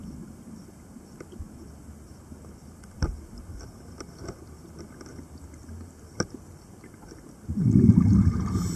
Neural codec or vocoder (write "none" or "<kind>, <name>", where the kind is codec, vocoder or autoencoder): none